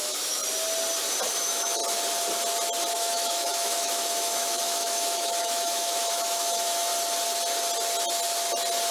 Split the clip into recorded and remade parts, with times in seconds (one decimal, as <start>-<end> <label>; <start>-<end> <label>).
0.0-0.4 remade; 0.4-1.3 recorded; 1.3-1.8 remade; 1.8-2.9 recorded; 2.9-6.9 remade; 6.9-8.9 recorded